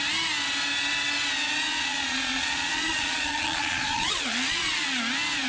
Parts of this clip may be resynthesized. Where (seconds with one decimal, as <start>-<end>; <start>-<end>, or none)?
1.7-5.0